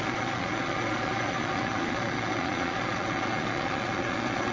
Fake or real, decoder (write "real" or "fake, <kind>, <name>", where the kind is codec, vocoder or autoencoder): fake, vocoder, Vocos